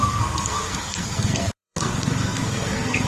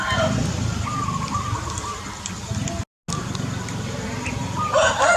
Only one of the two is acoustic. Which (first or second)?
second